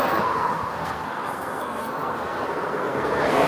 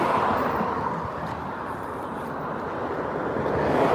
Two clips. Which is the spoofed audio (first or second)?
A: first